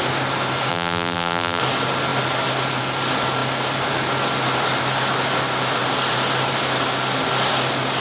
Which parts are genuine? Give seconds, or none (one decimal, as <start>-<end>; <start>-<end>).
0.0-0.7; 1.6-8.0